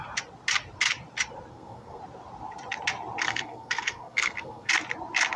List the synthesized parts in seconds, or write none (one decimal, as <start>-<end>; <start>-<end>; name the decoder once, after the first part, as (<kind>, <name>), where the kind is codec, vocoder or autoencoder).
1.5-2.0 (codec, SNAC); 3.2-4.7